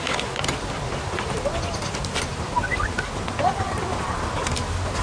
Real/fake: real